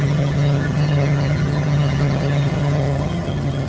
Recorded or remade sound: remade